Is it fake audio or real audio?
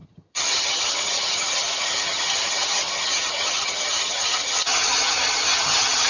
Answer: fake